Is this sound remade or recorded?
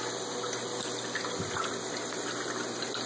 recorded